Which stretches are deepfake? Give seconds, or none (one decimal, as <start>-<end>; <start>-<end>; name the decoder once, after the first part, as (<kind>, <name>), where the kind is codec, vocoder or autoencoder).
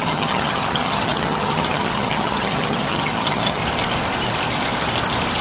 0.0-3.6 (vocoder, HiFi-GAN)